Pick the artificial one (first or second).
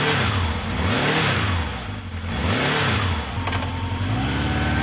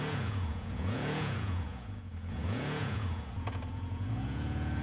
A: second